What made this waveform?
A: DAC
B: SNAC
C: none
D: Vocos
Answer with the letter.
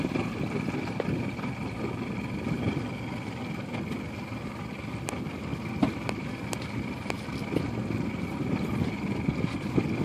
C